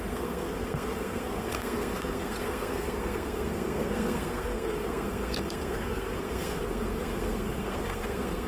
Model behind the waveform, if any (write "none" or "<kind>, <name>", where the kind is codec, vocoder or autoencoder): codec, SNAC